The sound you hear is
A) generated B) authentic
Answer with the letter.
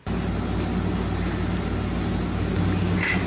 B